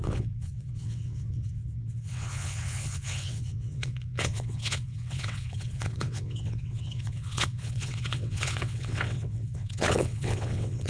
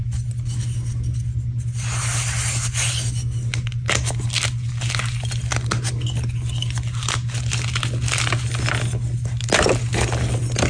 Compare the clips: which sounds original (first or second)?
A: second